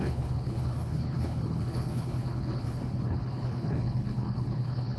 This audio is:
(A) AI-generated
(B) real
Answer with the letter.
A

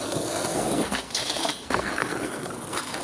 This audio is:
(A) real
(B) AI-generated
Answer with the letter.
B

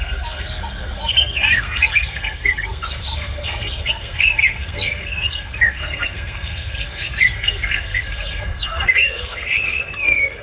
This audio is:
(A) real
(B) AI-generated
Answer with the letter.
B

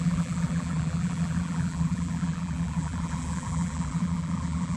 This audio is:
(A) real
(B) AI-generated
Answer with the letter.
B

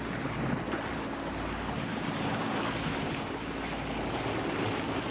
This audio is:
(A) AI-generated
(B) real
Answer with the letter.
B